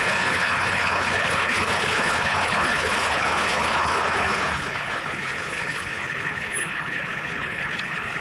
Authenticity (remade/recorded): remade